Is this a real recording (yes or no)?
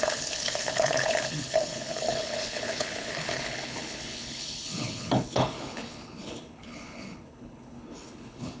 no